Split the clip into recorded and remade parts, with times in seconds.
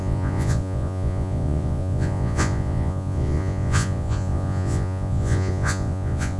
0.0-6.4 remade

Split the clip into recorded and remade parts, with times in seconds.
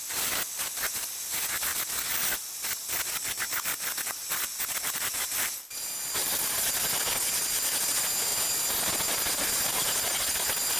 0.0-6.2 recorded; 6.2-6.7 remade; 6.7-10.8 recorded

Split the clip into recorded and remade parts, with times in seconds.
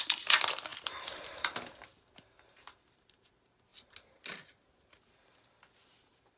0.0-0.7 recorded; 0.7-3.3 remade; 3.3-6.4 recorded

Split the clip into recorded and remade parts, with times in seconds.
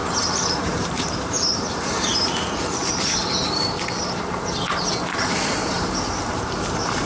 0.0-0.5 recorded; 0.5-2.1 remade; 2.1-5.7 recorded; 5.7-7.1 remade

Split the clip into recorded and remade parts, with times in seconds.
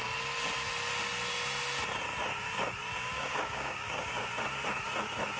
0.0-3.1 recorded; 3.1-4.1 remade; 4.1-5.4 recorded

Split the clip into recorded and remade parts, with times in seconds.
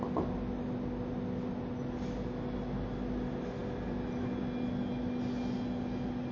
0.0-6.3 recorded